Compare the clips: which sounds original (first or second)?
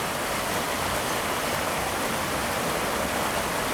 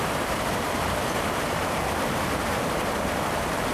first